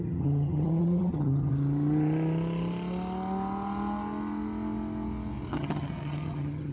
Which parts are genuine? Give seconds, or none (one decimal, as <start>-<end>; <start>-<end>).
1.5-5.5

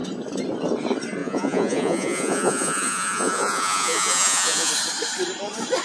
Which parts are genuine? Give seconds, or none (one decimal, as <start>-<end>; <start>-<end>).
0.0-1.2; 4.7-5.8